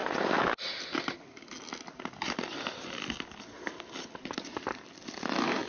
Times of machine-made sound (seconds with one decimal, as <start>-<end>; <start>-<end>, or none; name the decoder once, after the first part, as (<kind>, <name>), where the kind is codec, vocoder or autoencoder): none